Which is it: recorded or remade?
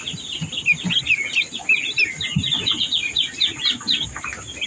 recorded